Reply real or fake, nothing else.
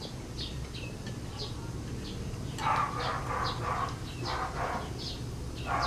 real